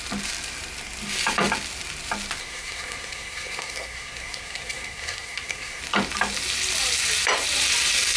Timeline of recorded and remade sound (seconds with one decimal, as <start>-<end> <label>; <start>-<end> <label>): 0.0-2.4 recorded; 2.4-5.8 remade; 5.8-8.2 recorded